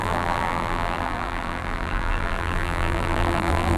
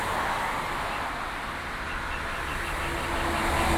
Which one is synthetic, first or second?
first